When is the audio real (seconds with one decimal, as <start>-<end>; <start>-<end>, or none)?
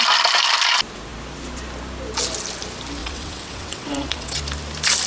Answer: 0.0-3.0; 4.4-5.1